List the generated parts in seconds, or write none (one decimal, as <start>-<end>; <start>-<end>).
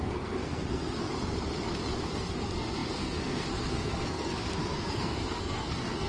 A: 0.0-1.1; 2.1-6.1